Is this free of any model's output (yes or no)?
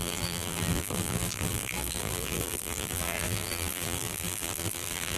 no